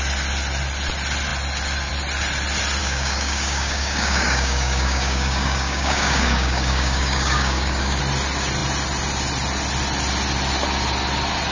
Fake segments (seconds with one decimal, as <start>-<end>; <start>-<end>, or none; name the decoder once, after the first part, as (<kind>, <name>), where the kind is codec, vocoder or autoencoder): 2.8-8.0 (codec, DAC)

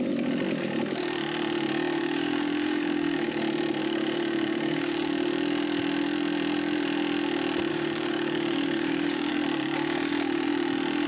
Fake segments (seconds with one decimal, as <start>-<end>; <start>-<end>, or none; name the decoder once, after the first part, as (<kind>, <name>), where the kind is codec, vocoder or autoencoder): 2.0-3.4 (codec, DAC); 3.8-5.1; 7.7-9.3

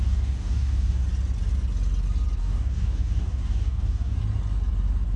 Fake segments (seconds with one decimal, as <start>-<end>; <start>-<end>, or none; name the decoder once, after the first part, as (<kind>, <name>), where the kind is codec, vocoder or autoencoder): 0.0-1.0 (codec, DAC); 2.4-4.2